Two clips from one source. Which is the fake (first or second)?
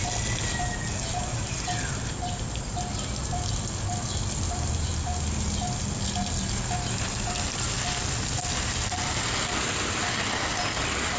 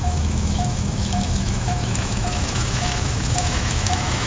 second